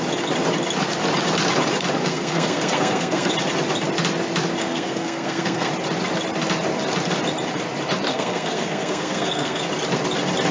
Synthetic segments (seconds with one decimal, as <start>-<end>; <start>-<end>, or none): 2.0-3.3; 4.6-5.7; 8.1-9.6